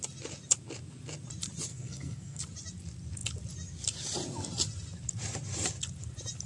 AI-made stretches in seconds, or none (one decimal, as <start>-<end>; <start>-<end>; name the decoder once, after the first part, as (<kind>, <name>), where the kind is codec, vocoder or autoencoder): 1.7-2.4 (codec, SNAC)